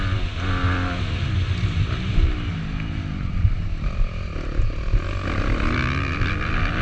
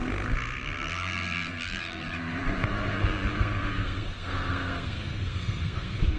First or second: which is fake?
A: second